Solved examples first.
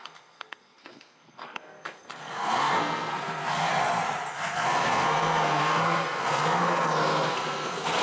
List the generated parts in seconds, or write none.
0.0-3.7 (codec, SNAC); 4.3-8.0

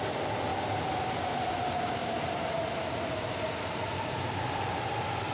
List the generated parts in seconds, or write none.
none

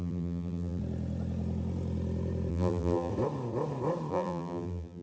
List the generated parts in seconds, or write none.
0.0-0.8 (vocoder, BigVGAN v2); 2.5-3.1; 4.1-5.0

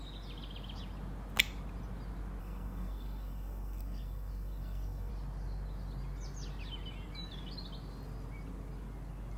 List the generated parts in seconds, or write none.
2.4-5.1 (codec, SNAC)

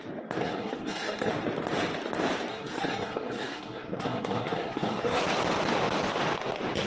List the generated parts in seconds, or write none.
0.4-1.3 (codec, SNAC); 2.5-5.2